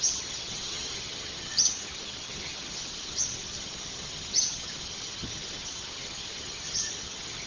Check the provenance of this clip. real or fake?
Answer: fake